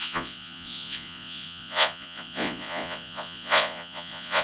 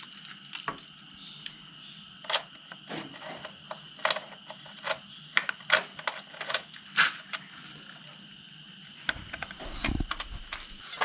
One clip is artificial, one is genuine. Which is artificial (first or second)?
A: first